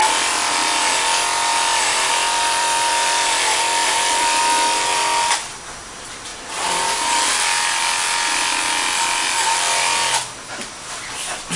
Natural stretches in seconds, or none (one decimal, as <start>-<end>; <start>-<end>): 0.0-1.5; 4.4-6.3; 7.8-11.6